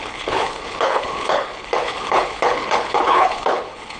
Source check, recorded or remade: remade